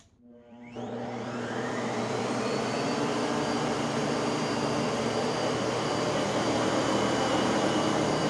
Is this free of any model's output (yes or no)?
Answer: no